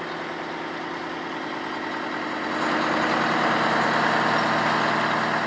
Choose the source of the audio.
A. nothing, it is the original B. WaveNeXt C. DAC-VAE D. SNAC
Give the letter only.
A